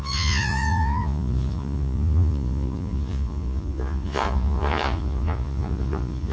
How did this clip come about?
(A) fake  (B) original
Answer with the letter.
A